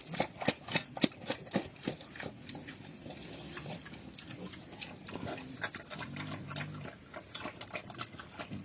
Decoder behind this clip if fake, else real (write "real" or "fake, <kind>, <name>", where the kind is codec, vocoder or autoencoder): real